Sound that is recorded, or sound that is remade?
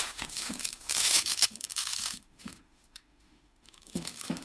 remade